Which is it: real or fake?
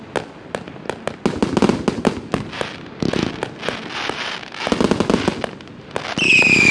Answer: real